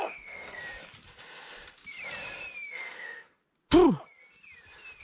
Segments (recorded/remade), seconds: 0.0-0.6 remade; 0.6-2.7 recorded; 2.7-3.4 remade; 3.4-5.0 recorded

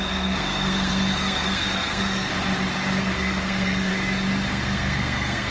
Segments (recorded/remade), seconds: 0.0-2.3 remade; 2.3-3.0 recorded; 3.0-3.9 remade; 3.9-4.5 recorded; 4.5-5.5 remade